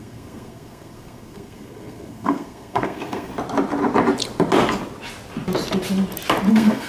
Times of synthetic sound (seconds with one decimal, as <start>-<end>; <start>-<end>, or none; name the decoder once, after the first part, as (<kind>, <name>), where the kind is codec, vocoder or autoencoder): 0.0-3.3 (codec, SNAC); 6.5-6.9